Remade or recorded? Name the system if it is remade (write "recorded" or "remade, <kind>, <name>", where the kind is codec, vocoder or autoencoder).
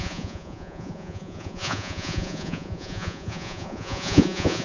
remade, vocoder, Vocos